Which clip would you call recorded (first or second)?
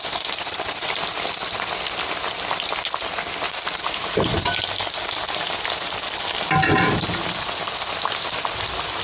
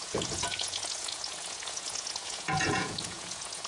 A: first